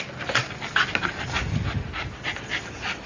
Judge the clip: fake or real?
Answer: real